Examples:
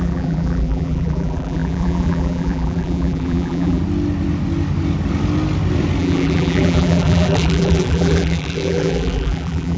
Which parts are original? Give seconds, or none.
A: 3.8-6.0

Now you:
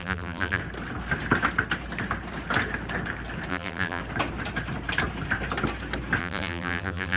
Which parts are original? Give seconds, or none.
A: 0.6-3.5; 4.0-6.2

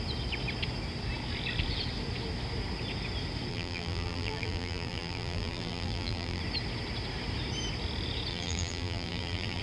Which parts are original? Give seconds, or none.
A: 0.0-3.5; 6.4-8.3

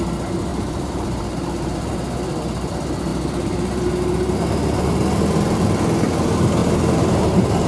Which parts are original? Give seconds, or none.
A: 0.0-0.5; 1.9-6.6